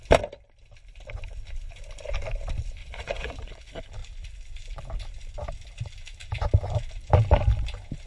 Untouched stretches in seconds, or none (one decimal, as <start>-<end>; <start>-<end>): 0.0-2.8; 3.5-8.1